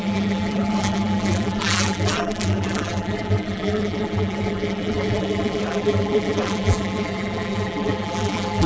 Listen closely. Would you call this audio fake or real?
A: fake